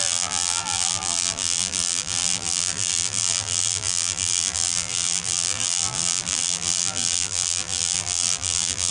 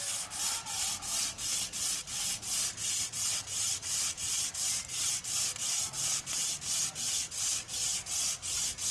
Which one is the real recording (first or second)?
second